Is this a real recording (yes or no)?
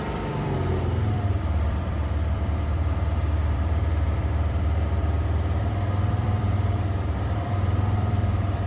no